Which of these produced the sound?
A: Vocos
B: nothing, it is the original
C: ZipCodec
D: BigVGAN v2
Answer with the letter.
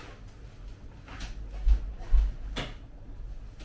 B